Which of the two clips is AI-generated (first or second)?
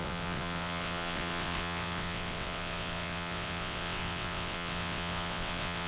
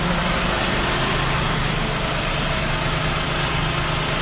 first